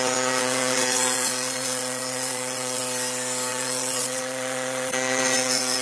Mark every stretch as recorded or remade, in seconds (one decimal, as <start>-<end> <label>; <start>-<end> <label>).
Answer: 0.0-2.8 remade; 2.8-3.5 recorded; 3.5-5.8 remade